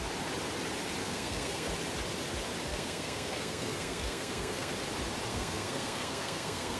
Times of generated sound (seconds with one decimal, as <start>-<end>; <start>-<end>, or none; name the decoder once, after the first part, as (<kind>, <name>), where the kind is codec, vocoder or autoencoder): 1.0-1.7 (codec, SNAC); 2.7-4.7; 5.3-6.8